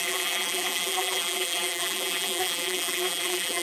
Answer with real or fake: fake